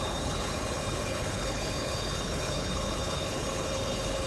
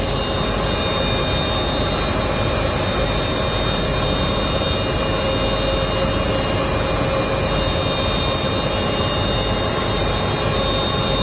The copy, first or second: first